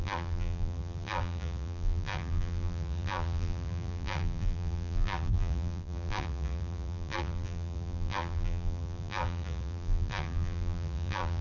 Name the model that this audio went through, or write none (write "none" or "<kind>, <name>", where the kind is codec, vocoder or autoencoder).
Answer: vocoder, BigVGAN v2